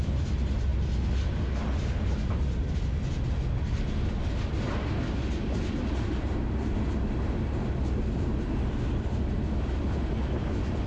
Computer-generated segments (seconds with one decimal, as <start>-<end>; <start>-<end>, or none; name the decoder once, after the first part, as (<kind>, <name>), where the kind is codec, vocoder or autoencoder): none